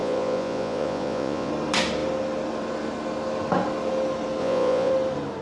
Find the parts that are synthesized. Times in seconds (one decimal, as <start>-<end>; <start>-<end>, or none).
0.0-1.5; 4.4-4.9